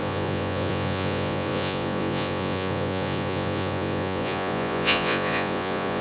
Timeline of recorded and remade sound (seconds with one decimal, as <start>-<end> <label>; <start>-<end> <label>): 0.0-6.0 remade